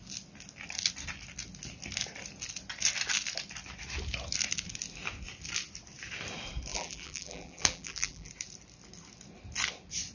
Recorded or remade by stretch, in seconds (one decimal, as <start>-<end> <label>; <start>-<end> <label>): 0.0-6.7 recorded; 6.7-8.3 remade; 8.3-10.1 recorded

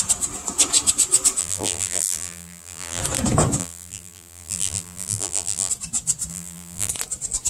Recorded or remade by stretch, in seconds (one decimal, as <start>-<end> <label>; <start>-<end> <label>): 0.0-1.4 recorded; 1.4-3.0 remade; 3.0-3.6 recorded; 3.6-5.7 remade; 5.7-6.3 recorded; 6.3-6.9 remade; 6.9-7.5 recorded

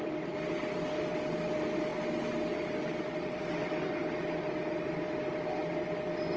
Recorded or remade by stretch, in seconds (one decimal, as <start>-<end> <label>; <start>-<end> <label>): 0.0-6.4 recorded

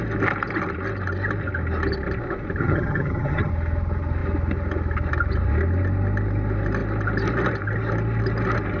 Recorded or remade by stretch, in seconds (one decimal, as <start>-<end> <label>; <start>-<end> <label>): 0.0-2.6 recorded; 2.6-3.5 remade; 3.5-8.8 recorded